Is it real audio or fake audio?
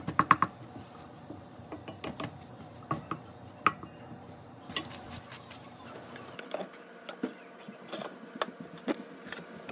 real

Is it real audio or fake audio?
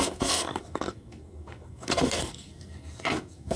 fake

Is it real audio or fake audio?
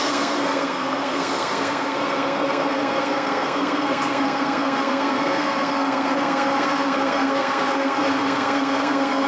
fake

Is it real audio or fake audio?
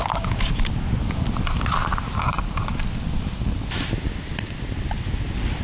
real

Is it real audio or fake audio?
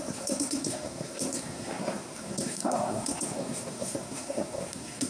fake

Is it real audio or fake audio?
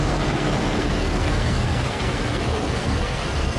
fake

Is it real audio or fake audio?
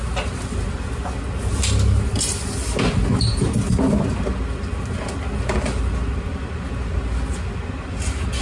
real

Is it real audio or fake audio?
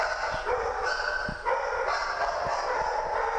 real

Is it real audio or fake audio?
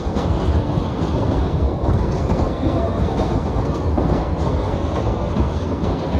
fake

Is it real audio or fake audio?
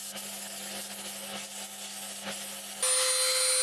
real